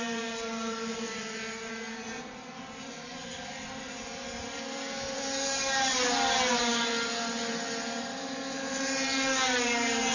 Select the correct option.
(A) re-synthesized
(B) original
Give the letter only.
A